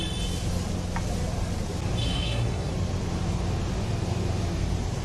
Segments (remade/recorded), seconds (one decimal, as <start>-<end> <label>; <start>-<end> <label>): 0.0-2.0 recorded; 2.0-2.7 remade; 2.7-5.0 recorded